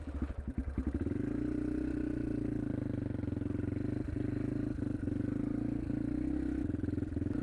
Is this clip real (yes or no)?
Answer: yes